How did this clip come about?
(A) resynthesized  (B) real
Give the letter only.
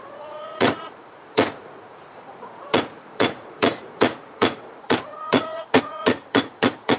A